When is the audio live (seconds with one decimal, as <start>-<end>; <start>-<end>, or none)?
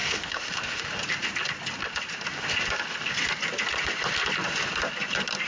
0.8-5.5